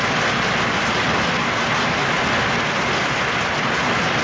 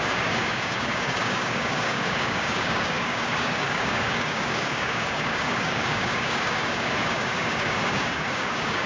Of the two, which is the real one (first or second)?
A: first